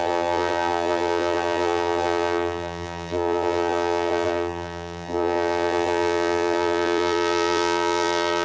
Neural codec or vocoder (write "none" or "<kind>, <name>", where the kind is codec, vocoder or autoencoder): vocoder, BigVGAN v2